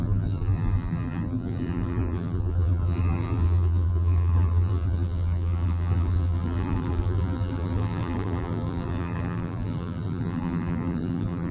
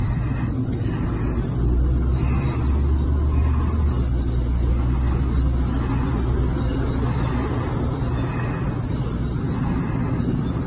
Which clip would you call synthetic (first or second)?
first